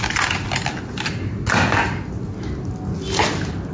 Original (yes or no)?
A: yes